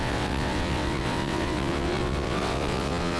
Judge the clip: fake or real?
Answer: fake